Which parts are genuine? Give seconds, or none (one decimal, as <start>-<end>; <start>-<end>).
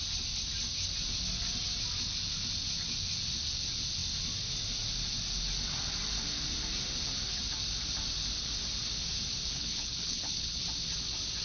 0.0-9.5; 10.6-11.4